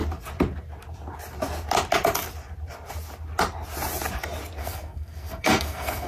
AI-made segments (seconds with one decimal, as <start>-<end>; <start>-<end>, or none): 4.6-6.1